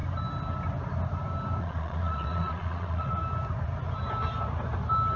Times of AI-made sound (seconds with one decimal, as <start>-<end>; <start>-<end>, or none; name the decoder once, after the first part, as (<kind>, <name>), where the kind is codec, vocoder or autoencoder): 1.6-3.2 (vocoder, Vocos)